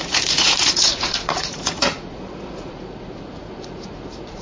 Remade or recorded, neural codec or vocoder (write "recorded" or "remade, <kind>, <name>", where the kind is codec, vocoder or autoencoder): remade, vocoder, Vocos